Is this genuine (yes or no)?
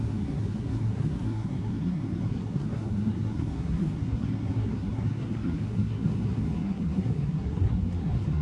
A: no